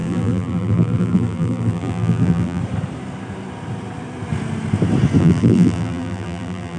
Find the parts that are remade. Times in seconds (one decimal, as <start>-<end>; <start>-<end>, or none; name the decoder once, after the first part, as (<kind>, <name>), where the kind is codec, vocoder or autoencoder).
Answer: 0.0-2.6 (vocoder, BigVGAN v2); 5.2-6.8